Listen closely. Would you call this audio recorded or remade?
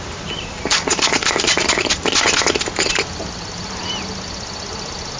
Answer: recorded